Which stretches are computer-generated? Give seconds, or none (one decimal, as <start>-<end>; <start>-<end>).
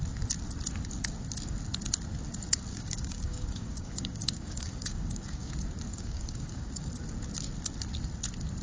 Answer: 2.7-5.5; 5.9-6.9